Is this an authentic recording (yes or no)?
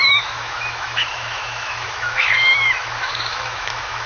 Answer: no